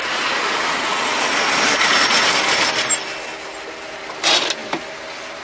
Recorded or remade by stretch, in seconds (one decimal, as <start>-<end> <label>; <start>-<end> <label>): 0.0-5.4 recorded